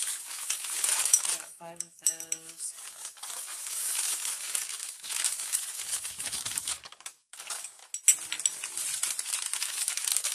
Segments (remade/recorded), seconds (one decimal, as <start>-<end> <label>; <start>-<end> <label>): 0.0-7.8 remade; 7.8-9.6 recorded; 9.6-10.3 remade